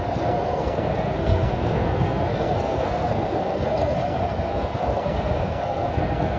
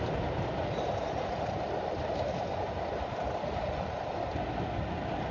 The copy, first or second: first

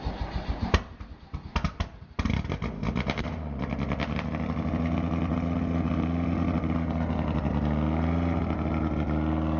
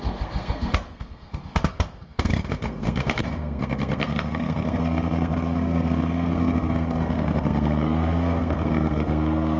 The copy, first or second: second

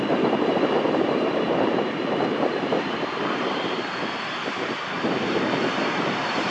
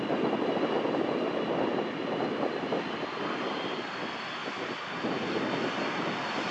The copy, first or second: first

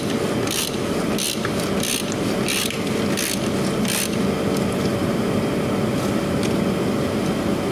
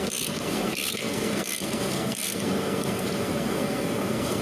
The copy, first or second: second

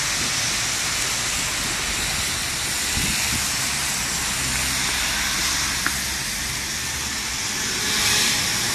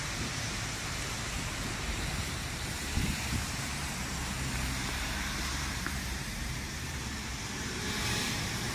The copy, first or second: second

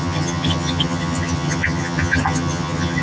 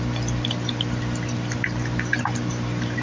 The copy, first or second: first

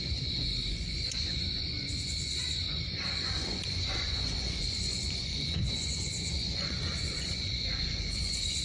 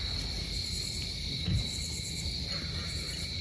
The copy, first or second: first